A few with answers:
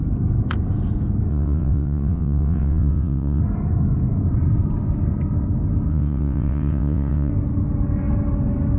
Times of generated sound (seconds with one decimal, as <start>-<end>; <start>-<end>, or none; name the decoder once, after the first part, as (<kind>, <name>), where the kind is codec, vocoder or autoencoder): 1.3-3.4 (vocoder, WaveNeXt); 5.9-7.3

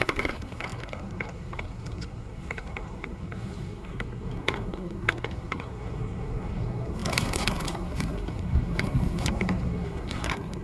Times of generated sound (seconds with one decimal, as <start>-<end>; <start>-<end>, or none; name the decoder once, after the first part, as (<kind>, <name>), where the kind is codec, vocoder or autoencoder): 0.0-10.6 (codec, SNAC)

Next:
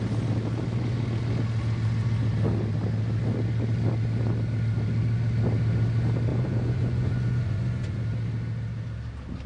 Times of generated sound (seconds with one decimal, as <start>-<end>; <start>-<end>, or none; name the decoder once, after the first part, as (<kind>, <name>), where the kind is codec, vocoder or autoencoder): 6.3-8.0 (vocoder, Vocos)

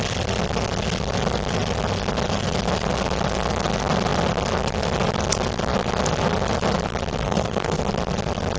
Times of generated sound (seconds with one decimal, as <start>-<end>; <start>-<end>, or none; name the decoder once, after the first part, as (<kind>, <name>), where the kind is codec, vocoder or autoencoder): 7.2-7.8 (codec, SNAC)

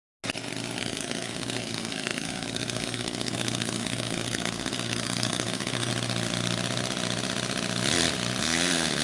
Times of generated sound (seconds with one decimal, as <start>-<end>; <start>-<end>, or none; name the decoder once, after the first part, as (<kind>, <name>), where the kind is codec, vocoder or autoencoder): 0.8-5.9 (codec, SNAC); 8.4-9.0

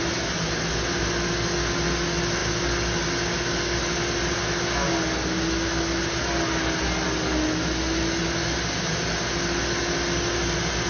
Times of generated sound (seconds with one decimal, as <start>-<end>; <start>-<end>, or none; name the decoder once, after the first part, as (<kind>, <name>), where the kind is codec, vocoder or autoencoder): none

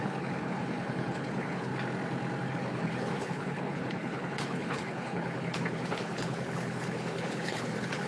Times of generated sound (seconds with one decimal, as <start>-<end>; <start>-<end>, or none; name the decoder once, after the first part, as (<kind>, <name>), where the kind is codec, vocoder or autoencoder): 0.0-1.7 (codec, HILCodec); 2.5-8.1